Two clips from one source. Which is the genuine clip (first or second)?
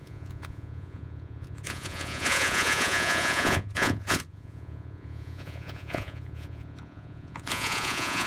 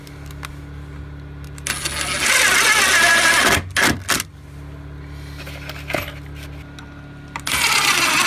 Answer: second